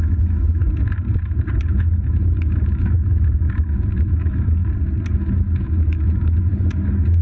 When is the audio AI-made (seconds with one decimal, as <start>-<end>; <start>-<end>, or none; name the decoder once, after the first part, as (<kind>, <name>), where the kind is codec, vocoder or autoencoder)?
0.0-0.6 (autoencoder, DAC-VAE); 1.6-4.6; 5.1-7.2